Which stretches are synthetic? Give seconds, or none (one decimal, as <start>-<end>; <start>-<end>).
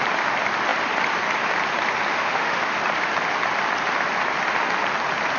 2.1-2.8